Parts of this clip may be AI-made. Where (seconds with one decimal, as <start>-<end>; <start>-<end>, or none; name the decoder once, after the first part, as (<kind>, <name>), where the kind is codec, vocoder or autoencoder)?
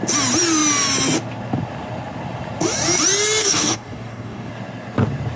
3.4-4.5 (codec, DAC)